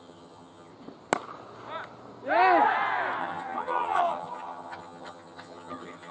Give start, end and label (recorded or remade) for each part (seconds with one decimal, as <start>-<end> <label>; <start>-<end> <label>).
0.0-0.7 remade; 0.7-3.2 recorded; 3.2-6.1 remade